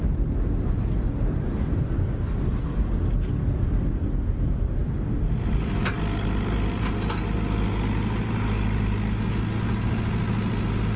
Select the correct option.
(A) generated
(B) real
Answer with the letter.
B